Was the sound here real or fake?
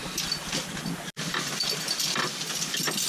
real